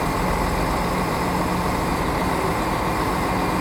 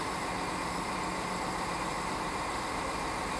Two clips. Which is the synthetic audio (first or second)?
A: second